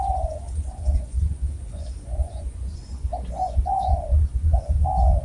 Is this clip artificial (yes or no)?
yes